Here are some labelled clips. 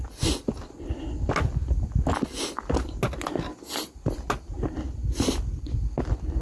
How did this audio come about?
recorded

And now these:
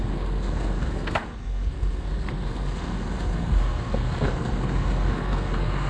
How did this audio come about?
remade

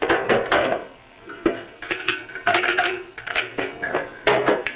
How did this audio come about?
remade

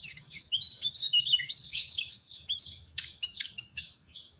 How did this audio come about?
remade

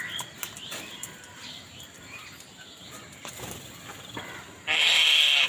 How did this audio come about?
recorded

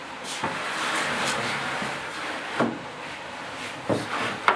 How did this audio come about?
recorded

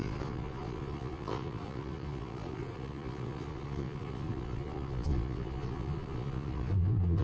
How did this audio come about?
remade